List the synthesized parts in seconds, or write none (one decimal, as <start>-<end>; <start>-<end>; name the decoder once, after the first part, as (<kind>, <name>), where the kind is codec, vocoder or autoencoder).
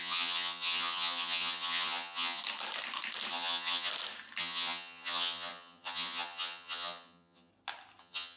0.0-2.4 (vocoder, HiFi-GAN); 3.3-3.9; 4.4-7.5; 8.0-8.4